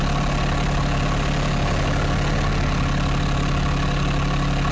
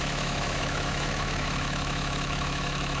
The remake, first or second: second